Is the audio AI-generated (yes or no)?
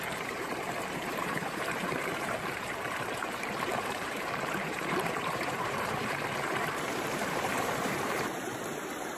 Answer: yes